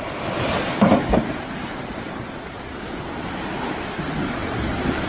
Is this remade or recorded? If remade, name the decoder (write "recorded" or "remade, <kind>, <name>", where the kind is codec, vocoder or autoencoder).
recorded